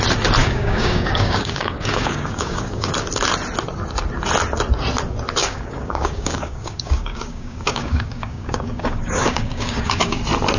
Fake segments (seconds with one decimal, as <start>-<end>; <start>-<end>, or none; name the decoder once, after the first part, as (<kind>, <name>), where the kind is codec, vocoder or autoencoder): 0.4-2.9 (codec, DAC); 5.4-10.2